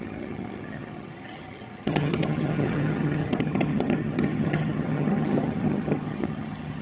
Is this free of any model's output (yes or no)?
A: no